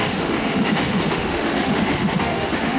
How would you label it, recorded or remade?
remade